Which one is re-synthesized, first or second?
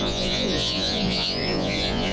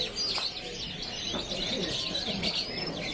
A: first